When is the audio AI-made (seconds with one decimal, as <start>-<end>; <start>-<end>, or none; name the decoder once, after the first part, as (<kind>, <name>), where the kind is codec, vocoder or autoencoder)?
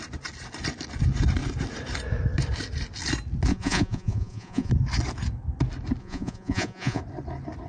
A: 3.5-4.7 (vocoder, Vocos); 6.0-7.0